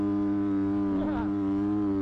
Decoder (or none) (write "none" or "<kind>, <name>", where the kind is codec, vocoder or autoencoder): none